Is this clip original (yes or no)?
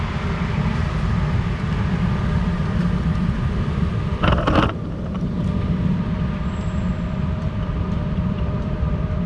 no